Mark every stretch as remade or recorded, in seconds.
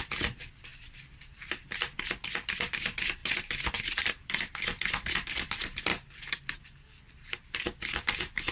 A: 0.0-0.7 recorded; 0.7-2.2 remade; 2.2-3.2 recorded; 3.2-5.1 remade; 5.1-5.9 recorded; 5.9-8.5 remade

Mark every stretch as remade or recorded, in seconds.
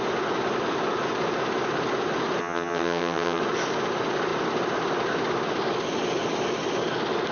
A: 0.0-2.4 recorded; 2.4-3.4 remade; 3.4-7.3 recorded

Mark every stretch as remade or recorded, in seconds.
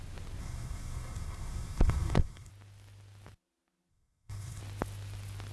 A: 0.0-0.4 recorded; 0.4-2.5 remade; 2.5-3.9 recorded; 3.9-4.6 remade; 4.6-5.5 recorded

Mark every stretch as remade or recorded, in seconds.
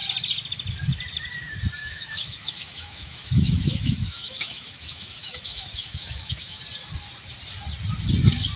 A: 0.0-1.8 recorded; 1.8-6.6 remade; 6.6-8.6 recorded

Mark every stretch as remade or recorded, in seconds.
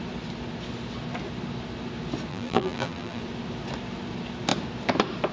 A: 0.0-2.3 recorded; 2.3-3.2 remade; 3.2-5.3 recorded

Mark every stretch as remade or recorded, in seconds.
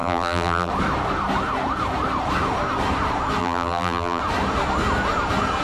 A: 0.0-0.7 remade; 0.7-3.4 recorded; 3.4-4.2 remade; 4.2-5.6 recorded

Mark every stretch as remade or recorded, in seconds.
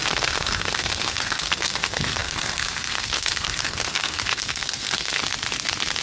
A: 0.0-5.2 remade; 5.2-6.0 recorded